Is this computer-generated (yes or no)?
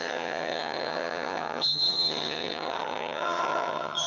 yes